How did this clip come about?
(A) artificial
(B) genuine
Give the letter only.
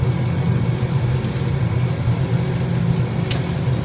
B